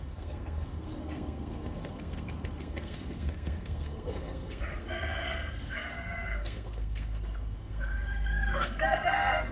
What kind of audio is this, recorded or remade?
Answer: remade